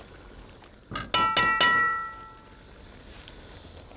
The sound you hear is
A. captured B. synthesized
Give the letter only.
A